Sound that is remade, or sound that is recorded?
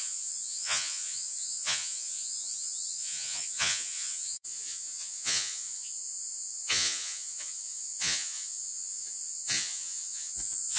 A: remade